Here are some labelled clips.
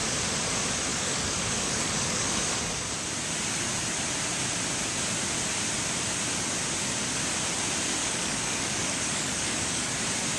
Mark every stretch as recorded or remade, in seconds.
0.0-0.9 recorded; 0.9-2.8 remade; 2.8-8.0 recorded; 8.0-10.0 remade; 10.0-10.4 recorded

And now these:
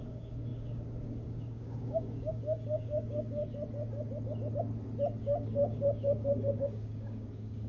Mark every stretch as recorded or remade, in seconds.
0.0-3.4 remade; 3.4-5.2 recorded; 5.2-7.7 remade

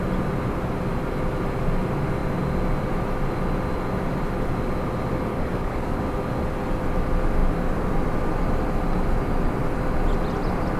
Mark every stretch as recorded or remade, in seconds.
0.0-5.3 recorded; 5.3-6.0 remade; 6.0-10.8 recorded